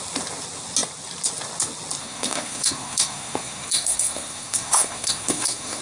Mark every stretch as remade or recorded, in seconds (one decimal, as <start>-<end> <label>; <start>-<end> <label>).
0.0-2.0 recorded; 2.0-5.8 remade